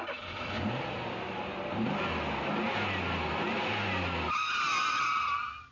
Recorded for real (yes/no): yes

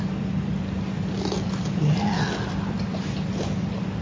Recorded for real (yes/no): yes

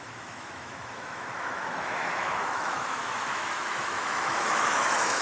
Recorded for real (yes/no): no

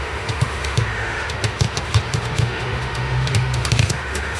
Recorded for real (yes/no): no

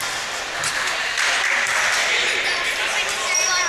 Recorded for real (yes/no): yes